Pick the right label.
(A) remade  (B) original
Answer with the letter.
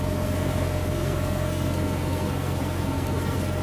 A